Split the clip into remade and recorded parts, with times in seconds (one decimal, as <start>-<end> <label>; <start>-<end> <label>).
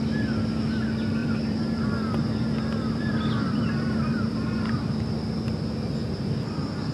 0.0-1.2 recorded; 1.2-5.2 remade; 5.2-6.0 recorded; 6.0-6.9 remade